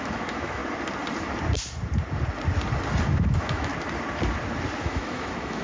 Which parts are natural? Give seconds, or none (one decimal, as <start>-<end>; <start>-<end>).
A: 0.6-3.1; 3.7-4.8